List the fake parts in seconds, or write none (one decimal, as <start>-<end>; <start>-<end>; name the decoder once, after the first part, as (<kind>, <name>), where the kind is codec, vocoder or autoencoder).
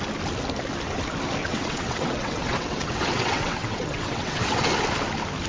1.4-4.7 (vocoder, WaveNeXt)